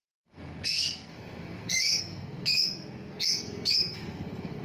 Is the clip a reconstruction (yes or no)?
yes